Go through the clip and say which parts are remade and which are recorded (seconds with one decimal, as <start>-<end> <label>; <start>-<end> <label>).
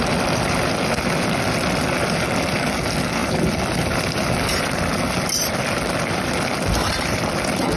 0.0-3.2 recorded; 3.2-4.8 remade; 4.8-6.8 recorded; 6.8-7.8 remade